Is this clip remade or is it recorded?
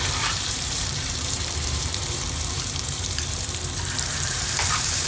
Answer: remade